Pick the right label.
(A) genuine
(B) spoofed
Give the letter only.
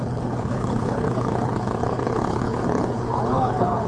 B